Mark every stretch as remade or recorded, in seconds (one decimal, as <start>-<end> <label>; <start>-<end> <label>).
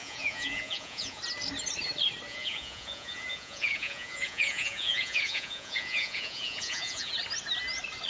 0.0-1.2 remade; 1.2-2.3 recorded; 2.3-7.1 remade; 7.1-8.1 recorded